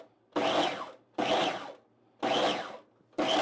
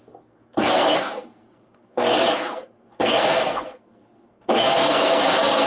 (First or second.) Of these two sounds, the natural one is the first